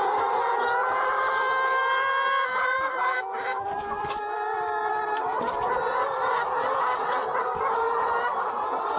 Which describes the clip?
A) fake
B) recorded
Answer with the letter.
A